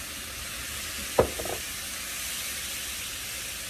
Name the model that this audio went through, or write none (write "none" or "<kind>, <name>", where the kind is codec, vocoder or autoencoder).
none